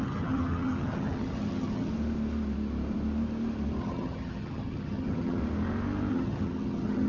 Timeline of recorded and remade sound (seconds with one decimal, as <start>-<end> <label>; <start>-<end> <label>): 0.0-1.9 remade; 1.9-3.8 recorded; 3.8-5.4 remade; 5.4-6.1 recorded; 6.1-7.1 remade